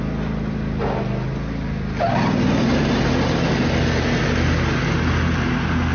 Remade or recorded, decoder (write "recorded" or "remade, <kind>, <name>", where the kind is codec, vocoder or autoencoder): recorded